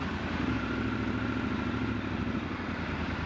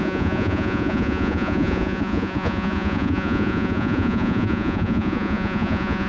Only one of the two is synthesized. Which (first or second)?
second